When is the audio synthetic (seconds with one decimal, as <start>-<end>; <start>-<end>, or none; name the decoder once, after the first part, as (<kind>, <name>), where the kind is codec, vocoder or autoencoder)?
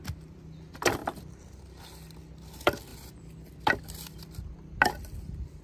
1.0-1.6 (vocoder, BigVGAN v2); 2.9-3.5